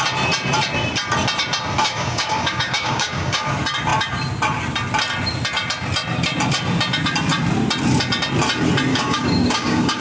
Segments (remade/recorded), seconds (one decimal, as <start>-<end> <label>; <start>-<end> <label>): 0.0-1.8 recorded; 1.8-3.5 remade; 3.5-8.9 recorded; 8.9-10.0 remade

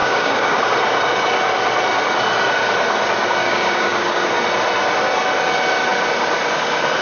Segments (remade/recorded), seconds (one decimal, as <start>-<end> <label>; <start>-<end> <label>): 0.0-0.6 remade; 0.6-3.4 recorded; 3.4-4.3 remade; 4.3-7.0 recorded

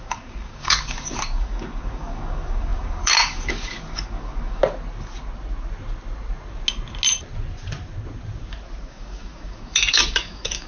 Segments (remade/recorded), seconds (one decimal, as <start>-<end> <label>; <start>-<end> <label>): 0.0-4.6 remade; 4.6-8.9 recorded; 8.9-10.7 remade

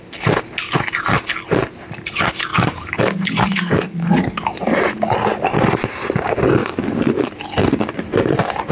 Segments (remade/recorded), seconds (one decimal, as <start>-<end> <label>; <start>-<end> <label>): 0.0-2.5 recorded; 2.5-4.6 remade; 4.6-6.6 recorded; 6.6-7.3 remade; 7.3-8.7 recorded

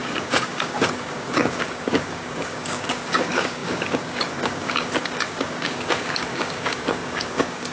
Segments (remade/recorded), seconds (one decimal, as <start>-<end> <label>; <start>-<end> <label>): 0.0-7.7 remade

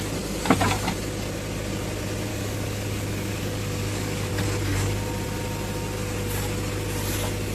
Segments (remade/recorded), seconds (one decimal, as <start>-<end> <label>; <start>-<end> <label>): 0.0-2.3 recorded; 2.3-4.3 remade; 4.3-7.5 recorded

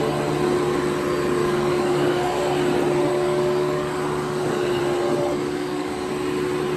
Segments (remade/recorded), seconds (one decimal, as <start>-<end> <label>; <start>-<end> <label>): 0.0-1.4 recorded; 1.4-2.4 remade; 2.4-3.1 recorded; 3.1-4.8 remade; 4.8-5.3 recorded; 5.3-6.1 remade; 6.1-6.8 recorded

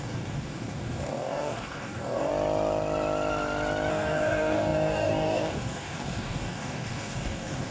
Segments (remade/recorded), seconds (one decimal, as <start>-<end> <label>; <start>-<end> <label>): 0.0-2.3 remade; 2.3-3.9 recorded; 3.9-7.7 remade